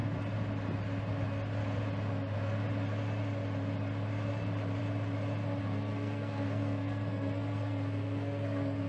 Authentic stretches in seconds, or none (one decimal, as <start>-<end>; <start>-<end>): 0.0-5.6